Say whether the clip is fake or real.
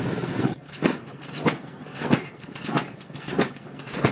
fake